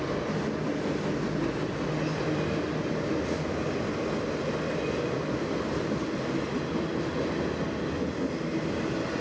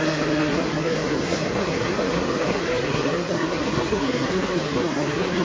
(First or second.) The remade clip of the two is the second